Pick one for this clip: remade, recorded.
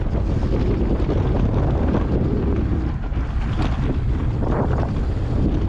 recorded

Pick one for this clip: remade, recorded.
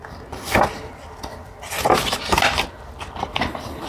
remade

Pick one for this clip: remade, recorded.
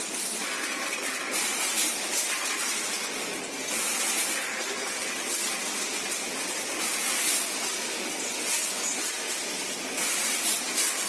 recorded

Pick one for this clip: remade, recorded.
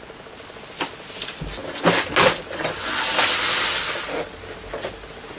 recorded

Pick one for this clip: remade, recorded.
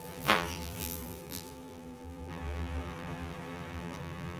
remade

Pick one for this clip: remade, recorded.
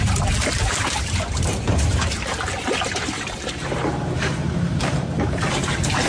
remade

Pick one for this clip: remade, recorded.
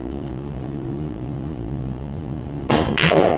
remade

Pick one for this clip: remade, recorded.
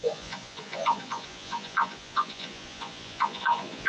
remade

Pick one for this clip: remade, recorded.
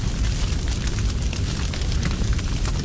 recorded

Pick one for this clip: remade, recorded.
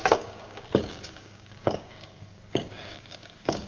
remade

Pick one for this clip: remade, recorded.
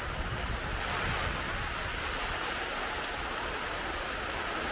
recorded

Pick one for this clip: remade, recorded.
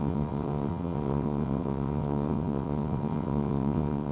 remade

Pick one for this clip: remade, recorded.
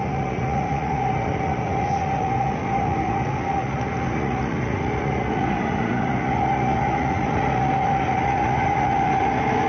remade